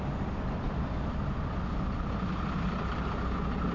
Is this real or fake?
real